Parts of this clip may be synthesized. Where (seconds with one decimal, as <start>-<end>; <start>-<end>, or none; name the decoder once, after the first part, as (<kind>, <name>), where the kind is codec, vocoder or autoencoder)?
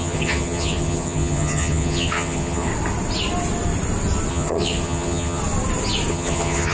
0.0-2.7 (vocoder, HiFi-GAN); 4.3-5.4; 6.1-6.7